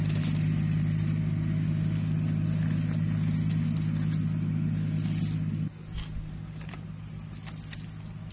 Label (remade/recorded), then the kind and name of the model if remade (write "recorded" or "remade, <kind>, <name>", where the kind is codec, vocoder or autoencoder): recorded